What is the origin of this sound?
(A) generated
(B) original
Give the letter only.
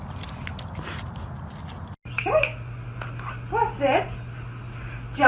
B